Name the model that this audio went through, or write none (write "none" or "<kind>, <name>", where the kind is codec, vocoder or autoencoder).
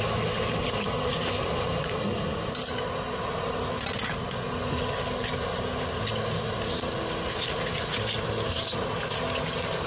none